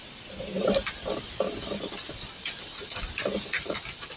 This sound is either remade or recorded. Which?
remade